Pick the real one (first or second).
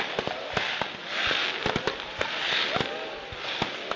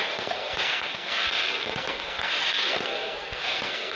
first